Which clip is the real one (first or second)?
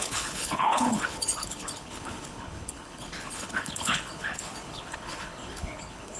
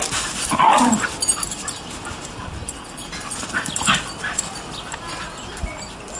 second